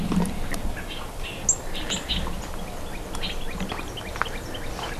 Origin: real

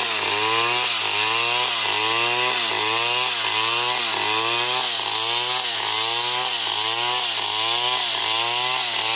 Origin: real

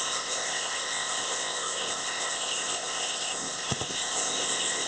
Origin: fake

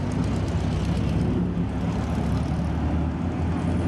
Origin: real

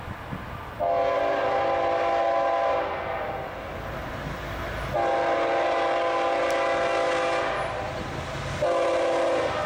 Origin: real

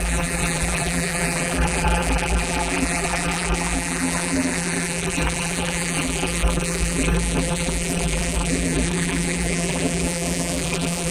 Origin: fake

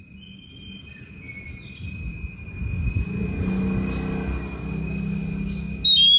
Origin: real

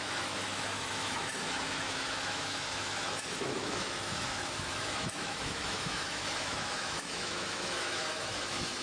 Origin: fake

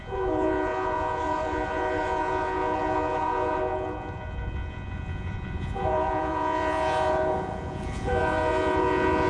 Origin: fake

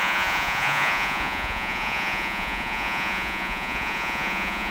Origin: fake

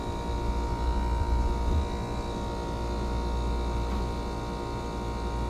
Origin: real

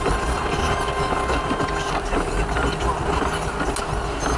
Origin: real